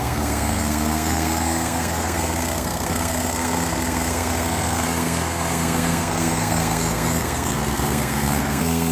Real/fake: fake